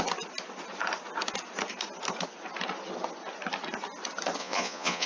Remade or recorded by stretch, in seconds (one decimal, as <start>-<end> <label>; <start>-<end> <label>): 0.0-4.4 recorded; 4.4-5.1 remade